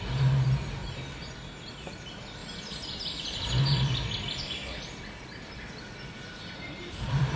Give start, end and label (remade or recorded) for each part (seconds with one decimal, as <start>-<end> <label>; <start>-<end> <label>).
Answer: 0.0-0.8 remade; 0.8-1.8 recorded; 1.8-4.6 remade; 4.6-6.4 recorded; 6.4-7.4 remade